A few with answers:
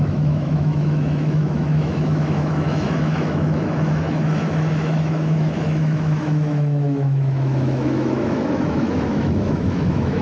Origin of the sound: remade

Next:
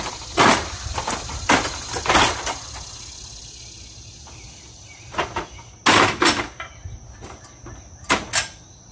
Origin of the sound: recorded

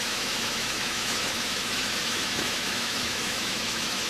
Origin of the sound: remade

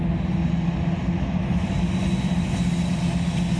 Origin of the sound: recorded